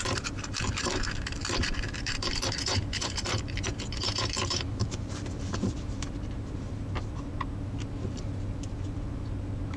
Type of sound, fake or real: fake